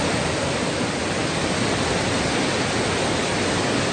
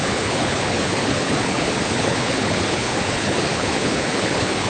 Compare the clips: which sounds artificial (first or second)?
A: second